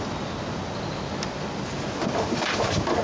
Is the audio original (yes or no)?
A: yes